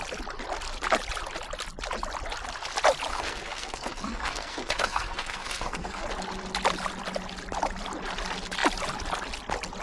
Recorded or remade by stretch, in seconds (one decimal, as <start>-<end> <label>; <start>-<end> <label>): 0.0-3.1 recorded; 3.1-6.1 remade; 6.1-9.8 recorded